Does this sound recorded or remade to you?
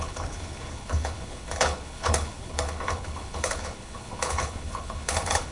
remade